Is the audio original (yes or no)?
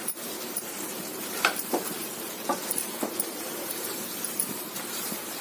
no